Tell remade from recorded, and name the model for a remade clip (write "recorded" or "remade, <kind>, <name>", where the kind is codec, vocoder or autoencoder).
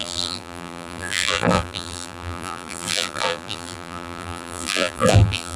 remade, vocoder, BigVGAN v2